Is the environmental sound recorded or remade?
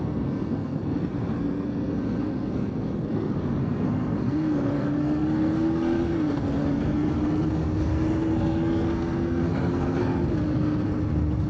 remade